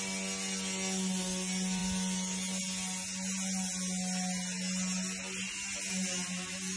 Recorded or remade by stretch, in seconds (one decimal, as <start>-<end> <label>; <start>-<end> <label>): 0.0-6.8 recorded